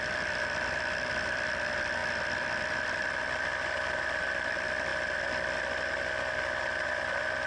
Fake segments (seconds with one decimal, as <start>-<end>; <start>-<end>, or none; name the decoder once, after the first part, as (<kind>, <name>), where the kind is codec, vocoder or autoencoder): 0.0-2.0 (vocoder, BigVGAN v2); 2.8-4.9; 6.3-7.5